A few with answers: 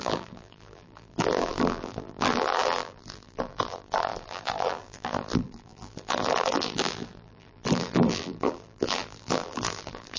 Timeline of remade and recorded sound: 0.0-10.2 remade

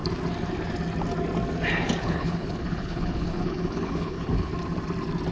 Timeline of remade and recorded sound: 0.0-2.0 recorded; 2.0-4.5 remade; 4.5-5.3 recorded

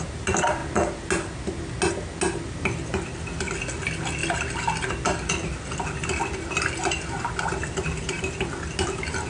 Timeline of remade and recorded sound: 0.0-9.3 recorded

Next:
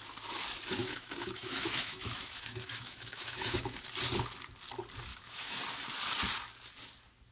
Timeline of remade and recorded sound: 0.0-0.8 recorded; 0.8-3.8 remade; 3.8-5.1 recorded; 5.1-5.6 remade; 5.6-7.3 recorded

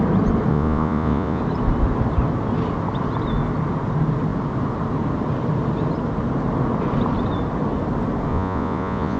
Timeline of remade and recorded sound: 0.0-0.5 recorded; 0.5-1.4 remade; 1.4-8.3 recorded; 8.3-9.2 remade

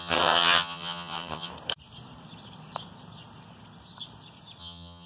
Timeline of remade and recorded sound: 0.0-1.5 remade; 1.5-4.6 recorded; 4.6-5.1 remade